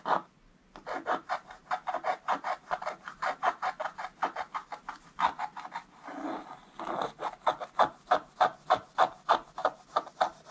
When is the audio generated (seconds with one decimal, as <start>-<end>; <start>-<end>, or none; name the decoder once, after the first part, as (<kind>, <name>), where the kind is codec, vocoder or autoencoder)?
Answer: none